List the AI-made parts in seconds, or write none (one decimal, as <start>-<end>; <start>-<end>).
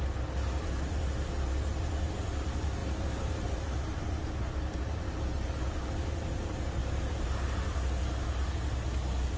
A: 2.8-4.3; 6.8-7.9